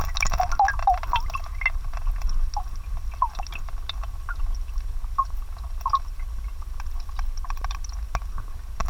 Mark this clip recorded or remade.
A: recorded